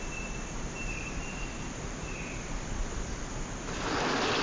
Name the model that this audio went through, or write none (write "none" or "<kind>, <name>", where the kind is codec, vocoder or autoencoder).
none